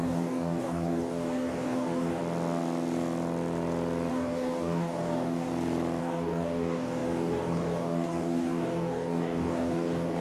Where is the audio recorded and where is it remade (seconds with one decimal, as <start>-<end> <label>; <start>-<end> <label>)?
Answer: 0.0-2.2 remade; 2.2-4.1 recorded; 4.1-5.5 remade; 5.5-6.0 recorded; 6.0-10.2 remade